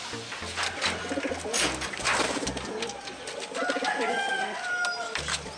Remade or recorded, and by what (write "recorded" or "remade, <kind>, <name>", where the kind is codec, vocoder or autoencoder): recorded